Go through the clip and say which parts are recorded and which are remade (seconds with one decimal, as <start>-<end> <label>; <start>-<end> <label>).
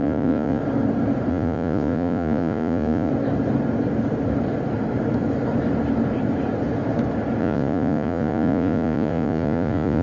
0.0-0.6 remade; 0.6-1.3 recorded; 1.3-3.1 remade; 3.1-7.4 recorded; 7.4-10.0 remade